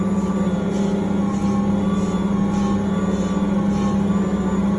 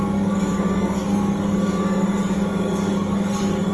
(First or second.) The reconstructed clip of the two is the second